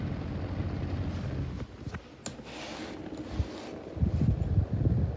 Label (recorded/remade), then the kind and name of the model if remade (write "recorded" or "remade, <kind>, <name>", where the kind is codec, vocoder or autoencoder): recorded